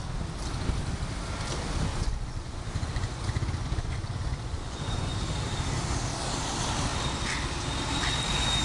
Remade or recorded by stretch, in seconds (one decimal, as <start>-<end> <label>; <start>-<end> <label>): 0.0-1.9 recorded; 1.9-5.3 remade; 5.3-8.6 recorded